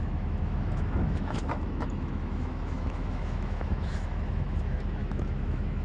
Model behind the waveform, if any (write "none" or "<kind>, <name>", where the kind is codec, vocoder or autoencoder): autoencoder, DAC-VAE